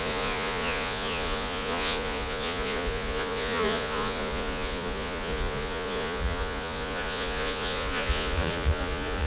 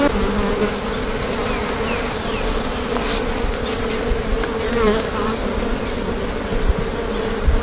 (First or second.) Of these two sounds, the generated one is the first